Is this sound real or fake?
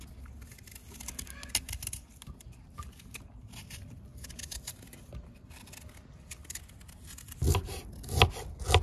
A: real